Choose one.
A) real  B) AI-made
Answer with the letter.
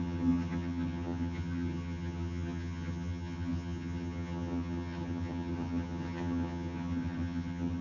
B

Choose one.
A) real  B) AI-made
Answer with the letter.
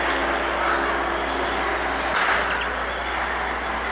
A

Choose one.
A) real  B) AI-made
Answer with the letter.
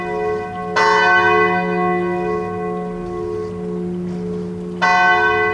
A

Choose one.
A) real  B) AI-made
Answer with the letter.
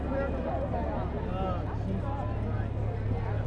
A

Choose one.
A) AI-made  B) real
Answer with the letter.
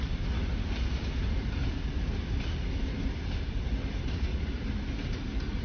B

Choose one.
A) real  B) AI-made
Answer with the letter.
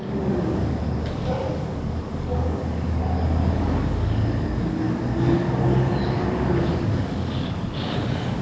B